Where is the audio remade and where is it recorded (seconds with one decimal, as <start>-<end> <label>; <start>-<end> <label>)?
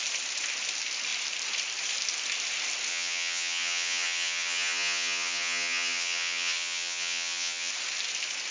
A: 0.0-2.9 recorded; 2.9-7.7 remade; 7.7-8.5 recorded